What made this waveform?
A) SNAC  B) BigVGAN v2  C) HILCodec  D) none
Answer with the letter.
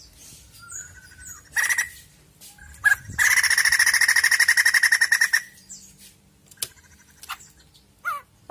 D